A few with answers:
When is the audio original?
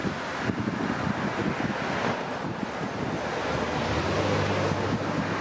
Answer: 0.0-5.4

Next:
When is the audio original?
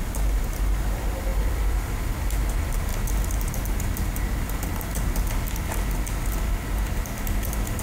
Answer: 0.0-1.3; 2.1-7.8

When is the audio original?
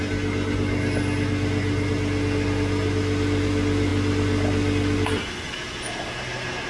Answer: 0.0-6.7